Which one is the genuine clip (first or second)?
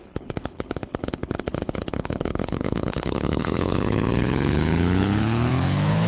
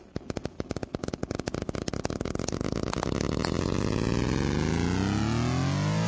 second